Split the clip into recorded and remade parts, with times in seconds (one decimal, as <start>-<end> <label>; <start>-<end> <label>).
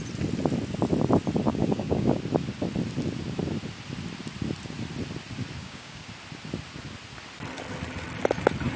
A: 0.0-1.5 recorded; 1.5-2.2 remade; 2.2-5.6 recorded; 5.6-6.1 remade; 6.1-8.8 recorded